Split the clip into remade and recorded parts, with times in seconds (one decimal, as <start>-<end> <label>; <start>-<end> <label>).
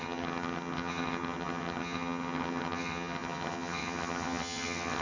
0.0-5.0 remade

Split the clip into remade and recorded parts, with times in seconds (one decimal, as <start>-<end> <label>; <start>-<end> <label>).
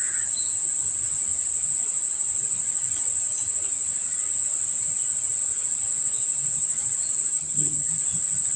0.0-7.3 recorded; 7.3-7.9 remade; 7.9-8.6 recorded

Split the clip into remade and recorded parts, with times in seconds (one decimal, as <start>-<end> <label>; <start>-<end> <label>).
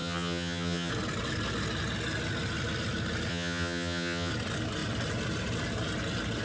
0.0-0.9 remade; 0.9-3.3 recorded; 3.3-4.3 remade; 4.3-6.4 recorded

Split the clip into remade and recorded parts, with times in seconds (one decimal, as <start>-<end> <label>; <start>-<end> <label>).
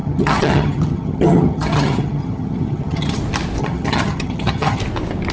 0.0-3.2 remade; 3.2-3.6 recorded; 3.6-4.8 remade; 4.8-5.3 recorded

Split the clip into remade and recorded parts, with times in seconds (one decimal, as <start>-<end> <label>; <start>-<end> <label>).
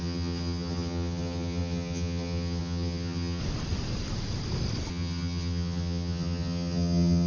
0.0-3.4 remade; 3.4-4.9 recorded; 4.9-7.3 remade